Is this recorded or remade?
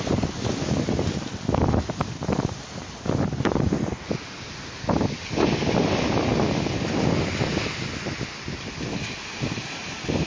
recorded